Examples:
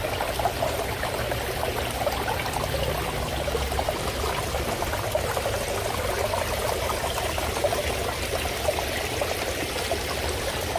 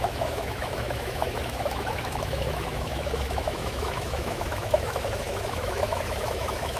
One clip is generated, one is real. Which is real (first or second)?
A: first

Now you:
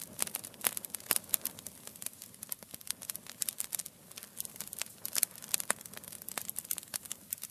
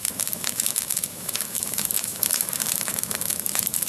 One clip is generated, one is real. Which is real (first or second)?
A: first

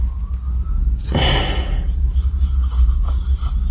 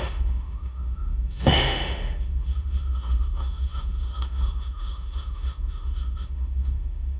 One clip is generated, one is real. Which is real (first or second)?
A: first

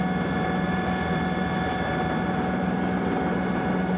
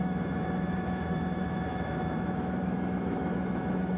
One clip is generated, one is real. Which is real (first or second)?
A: first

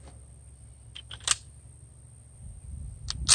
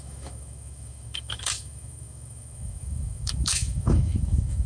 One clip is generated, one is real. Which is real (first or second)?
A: first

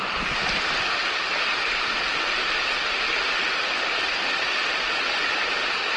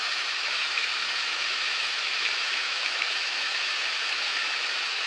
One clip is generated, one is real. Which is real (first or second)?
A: first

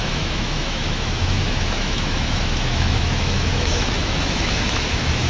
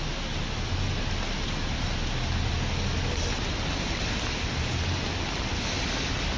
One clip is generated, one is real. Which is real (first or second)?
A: second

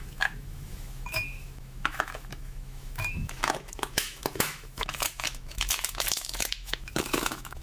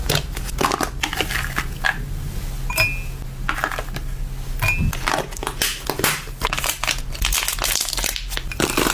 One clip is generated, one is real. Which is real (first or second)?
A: second